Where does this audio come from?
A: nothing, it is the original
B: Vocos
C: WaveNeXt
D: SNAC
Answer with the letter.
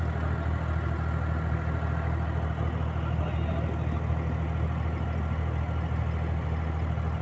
A